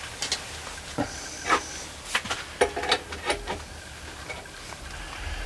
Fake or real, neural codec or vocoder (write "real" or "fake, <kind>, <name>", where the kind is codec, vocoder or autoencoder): real